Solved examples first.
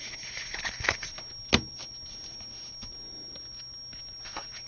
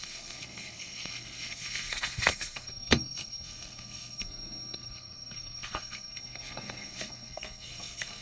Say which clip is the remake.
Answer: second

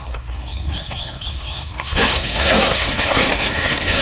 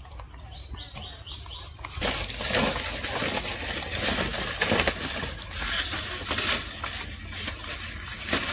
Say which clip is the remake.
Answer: first